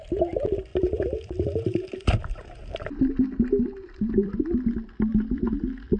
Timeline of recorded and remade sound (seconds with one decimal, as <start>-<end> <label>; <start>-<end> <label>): 0.0-0.7 recorded; 0.7-4.3 remade; 4.3-5.1 recorded; 5.1-5.6 remade; 5.6-6.0 recorded